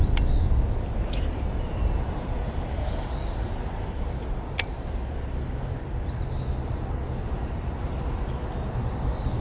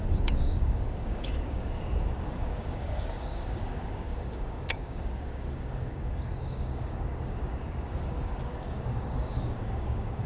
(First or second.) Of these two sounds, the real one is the first